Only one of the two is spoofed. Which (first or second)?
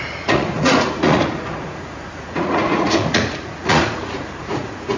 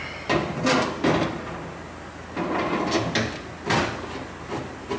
first